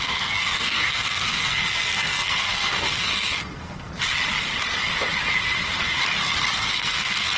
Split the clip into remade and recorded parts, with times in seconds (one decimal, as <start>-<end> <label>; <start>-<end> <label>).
0.0-3.9 remade; 3.9-6.7 recorded; 6.7-7.4 remade